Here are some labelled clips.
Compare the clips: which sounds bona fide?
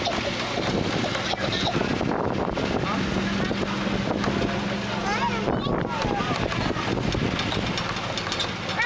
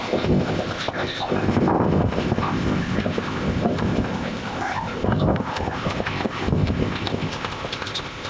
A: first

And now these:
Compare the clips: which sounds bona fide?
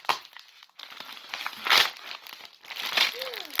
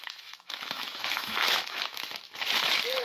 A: first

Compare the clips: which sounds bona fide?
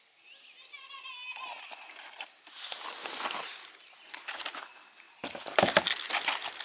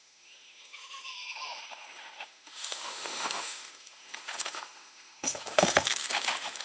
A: first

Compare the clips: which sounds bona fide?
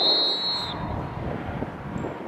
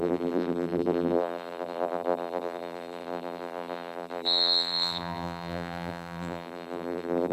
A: first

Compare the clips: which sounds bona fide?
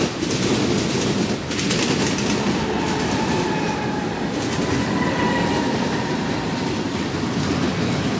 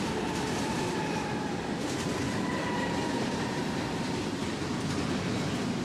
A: first